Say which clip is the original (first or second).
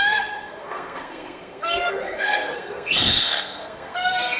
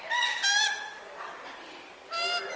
second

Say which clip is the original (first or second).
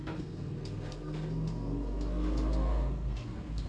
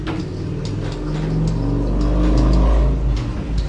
second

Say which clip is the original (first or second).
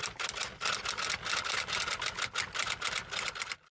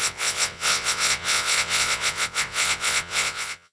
first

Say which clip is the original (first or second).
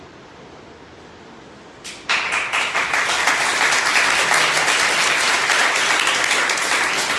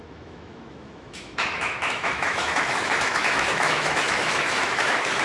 first